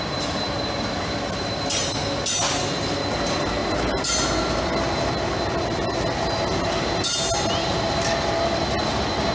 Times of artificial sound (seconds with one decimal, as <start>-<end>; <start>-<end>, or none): none